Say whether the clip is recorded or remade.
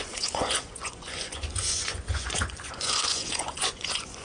remade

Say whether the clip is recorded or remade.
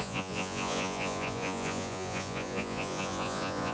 remade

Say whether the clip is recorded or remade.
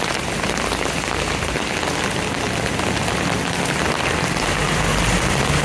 recorded